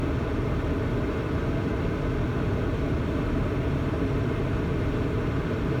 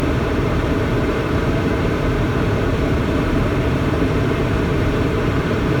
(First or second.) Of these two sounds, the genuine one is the first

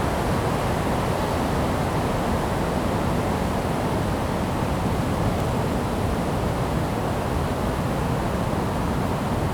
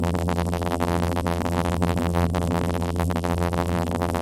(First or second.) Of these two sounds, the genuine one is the first